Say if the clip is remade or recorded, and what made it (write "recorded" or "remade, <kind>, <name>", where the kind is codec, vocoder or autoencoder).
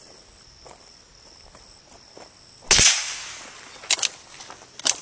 recorded